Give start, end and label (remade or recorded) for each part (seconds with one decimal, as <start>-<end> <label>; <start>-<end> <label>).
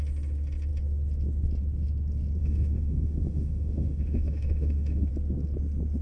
0.0-2.4 recorded; 2.4-5.1 remade; 5.1-6.0 recorded